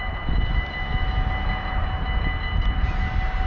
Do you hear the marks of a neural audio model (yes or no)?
no